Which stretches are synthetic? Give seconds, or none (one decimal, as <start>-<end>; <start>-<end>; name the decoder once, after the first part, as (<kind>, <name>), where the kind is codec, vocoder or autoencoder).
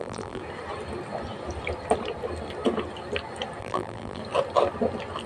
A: 0.0-0.4 (vocoder, BigVGAN v2); 3.6-4.2